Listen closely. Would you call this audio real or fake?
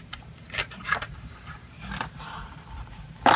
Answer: fake